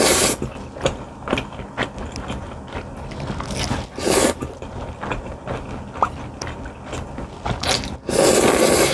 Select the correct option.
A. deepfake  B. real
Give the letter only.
B